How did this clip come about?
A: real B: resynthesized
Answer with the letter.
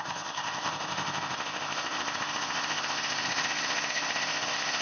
B